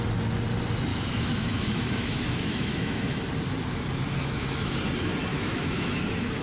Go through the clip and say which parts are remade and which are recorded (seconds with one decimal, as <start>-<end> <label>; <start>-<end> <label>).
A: 0.0-0.9 recorded; 0.9-3.2 remade; 3.2-4.2 recorded; 4.2-4.8 remade; 4.8-5.3 recorded; 5.3-6.0 remade; 6.0-6.4 recorded